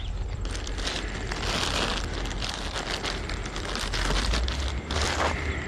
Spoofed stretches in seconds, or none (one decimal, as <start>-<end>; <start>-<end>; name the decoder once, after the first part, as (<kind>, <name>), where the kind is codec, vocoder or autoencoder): none